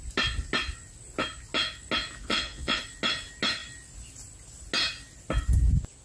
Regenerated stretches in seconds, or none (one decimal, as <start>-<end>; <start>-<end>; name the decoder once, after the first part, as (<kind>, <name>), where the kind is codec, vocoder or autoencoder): 2.2-2.8 (vocoder, Vocos)